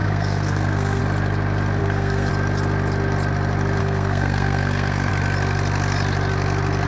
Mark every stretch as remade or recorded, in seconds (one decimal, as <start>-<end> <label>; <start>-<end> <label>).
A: 0.0-1.0 remade; 1.0-1.8 recorded; 1.8-2.3 remade; 2.3-3.8 recorded; 3.8-5.1 remade; 5.1-6.9 recorded